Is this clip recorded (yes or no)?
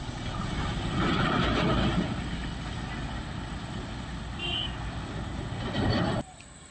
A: yes